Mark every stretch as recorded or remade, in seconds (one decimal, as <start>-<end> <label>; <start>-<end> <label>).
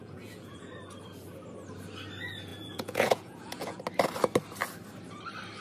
0.0-0.7 remade; 0.7-2.5 recorded; 2.5-3.8 remade; 3.8-5.6 recorded